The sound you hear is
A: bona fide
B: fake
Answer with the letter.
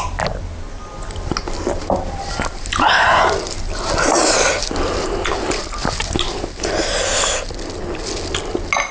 A